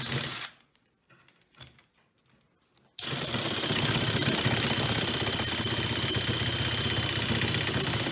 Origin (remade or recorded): recorded